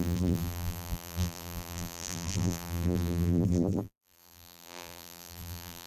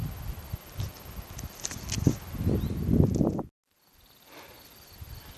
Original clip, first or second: second